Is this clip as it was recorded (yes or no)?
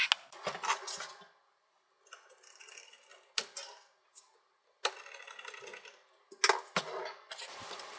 yes